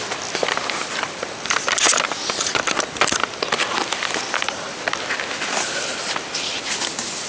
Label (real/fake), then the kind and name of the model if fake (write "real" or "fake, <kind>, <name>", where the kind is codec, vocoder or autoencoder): real